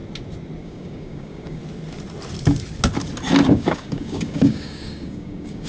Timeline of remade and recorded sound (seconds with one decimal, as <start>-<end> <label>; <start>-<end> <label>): 0.0-0.6 recorded; 0.6-1.6 remade; 1.6-3.5 recorded; 3.5-5.7 remade